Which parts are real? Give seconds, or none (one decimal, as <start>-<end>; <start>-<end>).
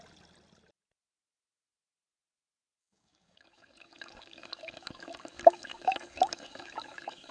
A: 0.0-2.8